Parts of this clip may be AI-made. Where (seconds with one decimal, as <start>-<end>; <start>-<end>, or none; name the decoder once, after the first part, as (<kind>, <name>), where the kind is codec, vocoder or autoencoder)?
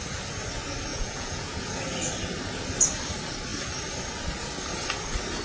0.9-1.8 (vocoder, Vocos)